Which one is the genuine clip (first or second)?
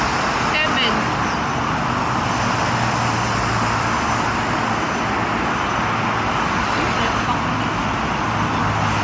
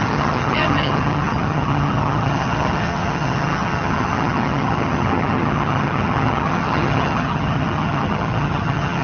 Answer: first